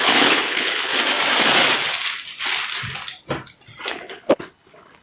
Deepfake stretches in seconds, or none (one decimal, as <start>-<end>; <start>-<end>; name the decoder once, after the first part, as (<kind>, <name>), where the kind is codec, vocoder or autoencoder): 0.0-0.9 (codec, HILCodec); 3.9-5.0